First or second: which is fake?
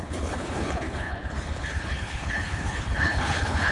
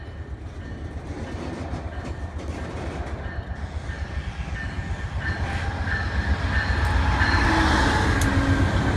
first